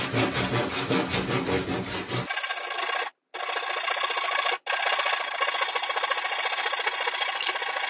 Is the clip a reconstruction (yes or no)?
no